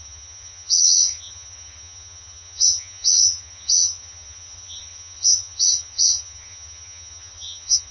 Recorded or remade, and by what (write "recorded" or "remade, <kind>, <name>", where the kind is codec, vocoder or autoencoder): remade, vocoder, HiFi-GAN